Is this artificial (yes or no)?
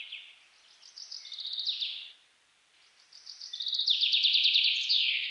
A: no